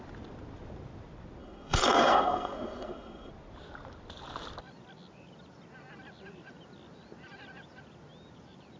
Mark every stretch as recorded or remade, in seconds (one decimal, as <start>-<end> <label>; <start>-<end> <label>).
0.0-1.4 recorded; 1.4-3.3 remade; 3.3-8.8 recorded